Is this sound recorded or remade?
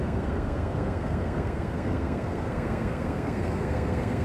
remade